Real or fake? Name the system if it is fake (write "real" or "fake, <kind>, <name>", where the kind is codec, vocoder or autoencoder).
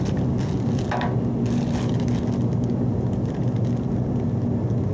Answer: real